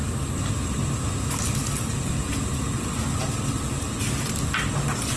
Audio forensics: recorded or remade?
recorded